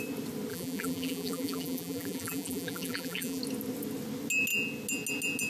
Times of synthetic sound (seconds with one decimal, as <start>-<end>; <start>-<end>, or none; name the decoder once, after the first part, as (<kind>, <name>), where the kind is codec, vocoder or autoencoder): 0.5-3.4 (vocoder, BigVGAN v2)